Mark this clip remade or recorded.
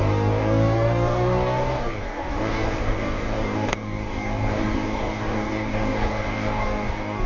remade